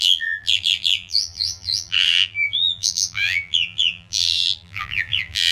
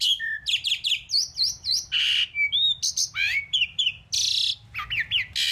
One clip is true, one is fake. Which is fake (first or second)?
first